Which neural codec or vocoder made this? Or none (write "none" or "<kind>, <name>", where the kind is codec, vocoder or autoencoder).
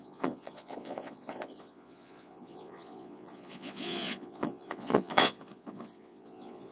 vocoder, Vocos